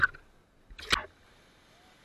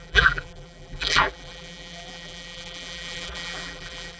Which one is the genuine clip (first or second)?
first